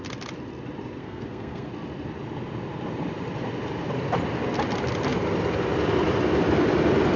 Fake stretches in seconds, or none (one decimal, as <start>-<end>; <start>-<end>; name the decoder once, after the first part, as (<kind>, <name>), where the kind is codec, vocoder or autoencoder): 1.0-1.7 (codec, SNAC)